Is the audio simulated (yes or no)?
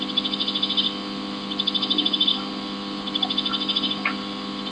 no